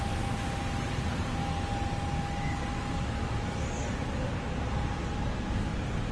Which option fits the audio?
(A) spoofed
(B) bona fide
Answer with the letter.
B